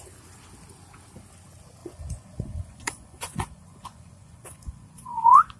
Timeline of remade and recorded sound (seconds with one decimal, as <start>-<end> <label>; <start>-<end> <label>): 0.0-1.8 recorded; 1.8-5.6 remade